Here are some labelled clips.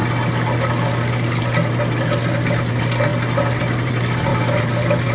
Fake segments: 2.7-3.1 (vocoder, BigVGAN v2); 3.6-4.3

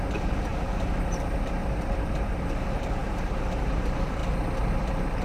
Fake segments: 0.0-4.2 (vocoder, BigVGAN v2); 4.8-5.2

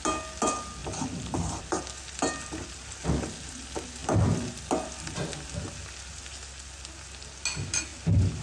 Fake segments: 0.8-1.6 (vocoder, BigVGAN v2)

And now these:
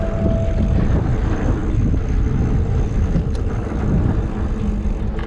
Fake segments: none

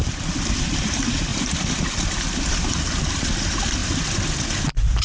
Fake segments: 0.0-1.3 (vocoder, BigVGAN v2); 2.5-5.0